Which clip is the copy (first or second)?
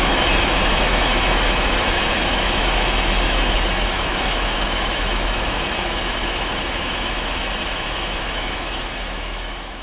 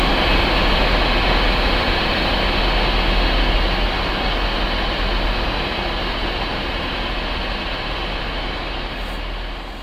first